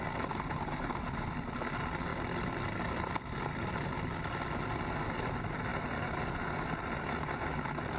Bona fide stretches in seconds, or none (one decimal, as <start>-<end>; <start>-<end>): 0.0-8.0